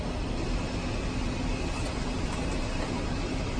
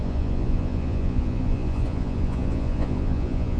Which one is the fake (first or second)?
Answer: second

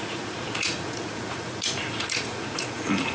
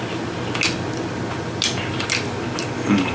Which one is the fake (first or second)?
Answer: first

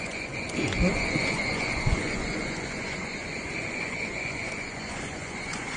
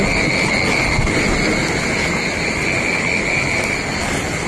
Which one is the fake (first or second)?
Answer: first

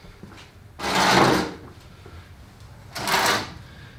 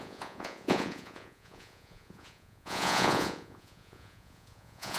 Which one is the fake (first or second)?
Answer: second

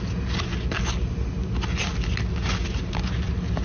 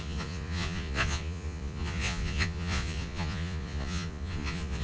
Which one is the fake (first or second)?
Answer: second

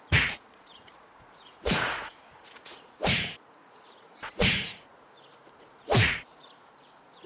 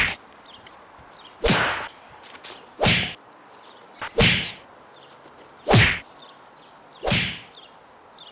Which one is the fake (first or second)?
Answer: first